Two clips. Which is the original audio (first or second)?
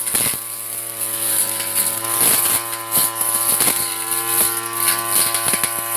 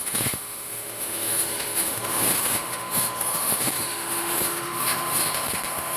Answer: first